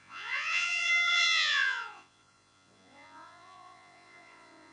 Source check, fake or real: fake